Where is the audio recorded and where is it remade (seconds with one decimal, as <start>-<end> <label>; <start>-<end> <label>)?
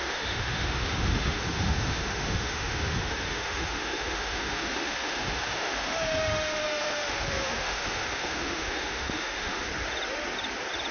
0.0-9.7 remade; 9.7-10.9 recorded